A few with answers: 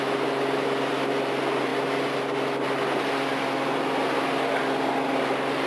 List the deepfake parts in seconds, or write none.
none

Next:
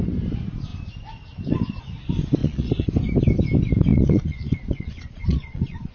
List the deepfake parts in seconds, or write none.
2.4-2.9 (vocoder, Vocos); 3.9-5.9

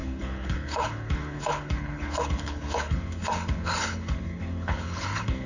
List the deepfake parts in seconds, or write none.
0.0-5.5 (codec, HILCodec)

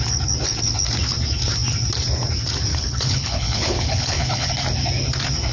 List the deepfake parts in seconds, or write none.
2.7-4.5 (codec, HILCodec)

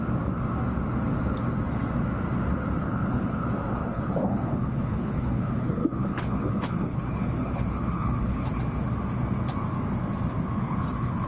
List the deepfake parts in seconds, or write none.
2.8-3.4 (codec, HILCodec); 3.8-8.6; 10.6-11.3

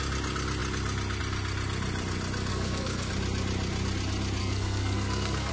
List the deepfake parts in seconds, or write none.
2.5-3.1 (codec, SNAC); 4.4-5.5